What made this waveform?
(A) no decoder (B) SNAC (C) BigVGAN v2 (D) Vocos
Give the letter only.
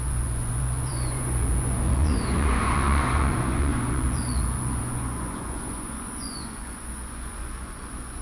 D